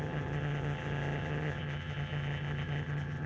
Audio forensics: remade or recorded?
remade